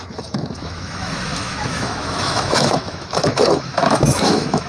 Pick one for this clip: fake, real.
fake